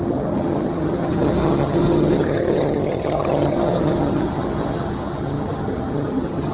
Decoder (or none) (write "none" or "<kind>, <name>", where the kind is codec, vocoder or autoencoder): vocoder, HiFi-GAN